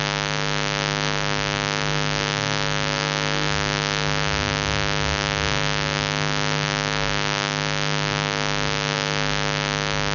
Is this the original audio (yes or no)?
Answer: no